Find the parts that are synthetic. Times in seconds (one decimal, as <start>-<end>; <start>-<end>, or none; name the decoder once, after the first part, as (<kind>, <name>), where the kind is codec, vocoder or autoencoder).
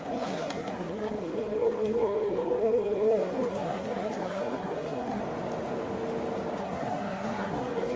0.0-5.2 (codec, SNAC); 6.6-8.0